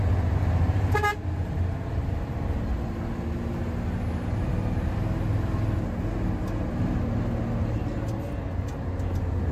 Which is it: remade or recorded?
recorded